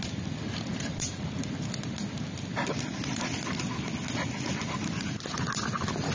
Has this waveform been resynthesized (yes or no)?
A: no